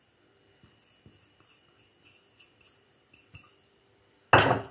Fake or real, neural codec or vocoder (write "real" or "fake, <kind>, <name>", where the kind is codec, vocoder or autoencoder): real